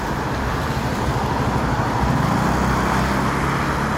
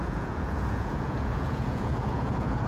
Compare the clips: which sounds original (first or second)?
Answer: first